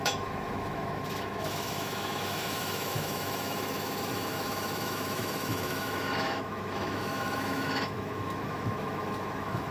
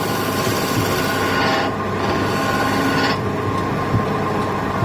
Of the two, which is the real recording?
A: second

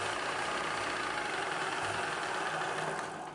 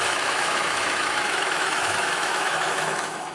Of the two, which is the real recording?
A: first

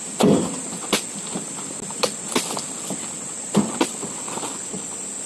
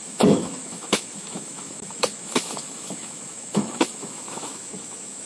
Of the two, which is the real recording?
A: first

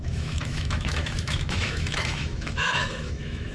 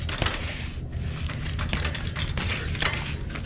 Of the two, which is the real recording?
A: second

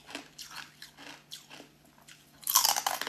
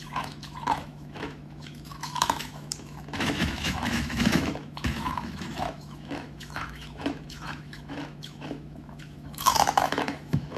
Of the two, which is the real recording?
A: first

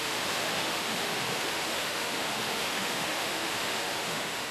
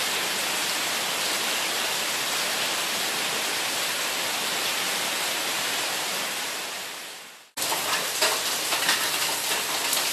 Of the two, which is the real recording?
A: second